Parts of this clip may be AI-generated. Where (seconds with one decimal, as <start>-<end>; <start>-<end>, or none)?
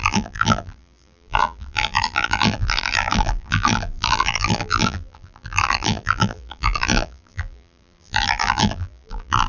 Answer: 0.0-9.5